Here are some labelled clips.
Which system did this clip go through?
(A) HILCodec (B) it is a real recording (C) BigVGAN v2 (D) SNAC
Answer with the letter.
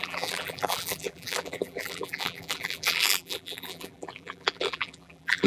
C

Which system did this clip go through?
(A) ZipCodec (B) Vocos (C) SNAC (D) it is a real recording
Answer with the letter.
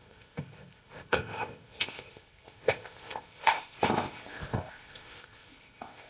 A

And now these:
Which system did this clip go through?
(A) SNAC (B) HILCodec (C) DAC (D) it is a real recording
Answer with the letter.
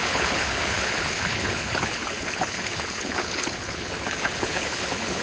B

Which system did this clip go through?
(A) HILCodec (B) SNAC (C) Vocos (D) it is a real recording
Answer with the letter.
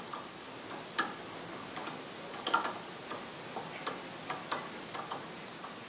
D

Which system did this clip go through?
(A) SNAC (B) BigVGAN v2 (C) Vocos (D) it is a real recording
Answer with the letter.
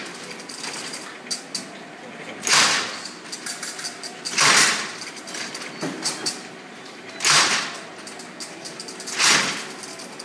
D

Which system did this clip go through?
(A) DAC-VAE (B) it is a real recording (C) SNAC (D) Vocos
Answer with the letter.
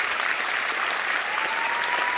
B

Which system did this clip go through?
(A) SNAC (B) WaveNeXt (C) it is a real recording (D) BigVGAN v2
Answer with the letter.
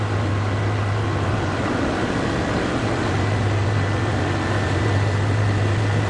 C